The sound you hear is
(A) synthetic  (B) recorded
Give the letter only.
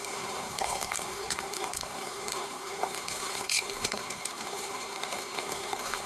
A